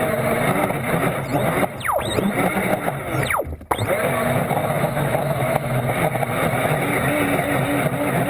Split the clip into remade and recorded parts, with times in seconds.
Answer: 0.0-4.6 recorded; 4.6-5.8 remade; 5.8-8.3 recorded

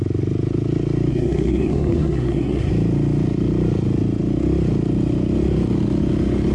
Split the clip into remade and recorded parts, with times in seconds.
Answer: 0.0-1.1 recorded; 1.1-2.7 remade; 2.7-6.5 recorded

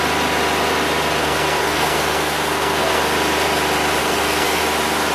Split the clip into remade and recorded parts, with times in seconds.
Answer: 0.0-1.2 recorded; 1.2-3.0 remade; 3.0-4.0 recorded; 4.0-4.6 remade; 4.6-5.1 recorded

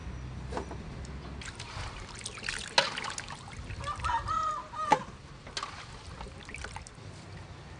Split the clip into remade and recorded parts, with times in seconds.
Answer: 0.0-7.8 recorded

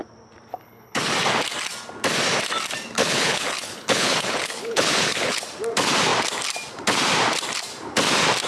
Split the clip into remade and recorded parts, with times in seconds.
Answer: 0.0-0.5 recorded; 0.5-1.0 remade; 1.0-3.0 recorded; 3.0-5.4 remade; 5.4-8.5 recorded

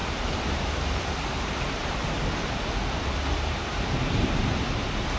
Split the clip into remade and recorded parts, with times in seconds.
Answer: 0.0-1.0 remade; 1.0-1.8 recorded; 1.8-2.6 remade; 2.6-3.7 recorded; 3.7-4.4 remade; 4.4-5.2 recorded

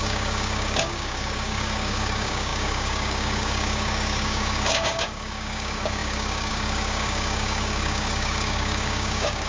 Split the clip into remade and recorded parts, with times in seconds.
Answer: 0.0-9.5 remade

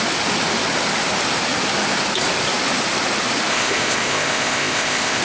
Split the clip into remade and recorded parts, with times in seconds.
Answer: 0.0-3.5 recorded; 3.5-5.2 remade